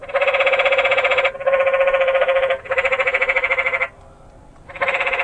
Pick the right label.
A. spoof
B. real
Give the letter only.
B